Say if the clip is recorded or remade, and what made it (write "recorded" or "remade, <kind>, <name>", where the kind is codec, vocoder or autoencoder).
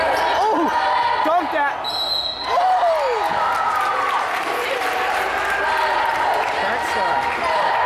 recorded